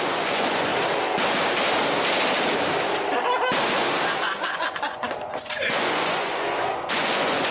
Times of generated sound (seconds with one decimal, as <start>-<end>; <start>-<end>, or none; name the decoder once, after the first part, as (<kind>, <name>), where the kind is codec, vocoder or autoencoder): 0.0-0.7 (vocoder, Vocos); 4.2-7.5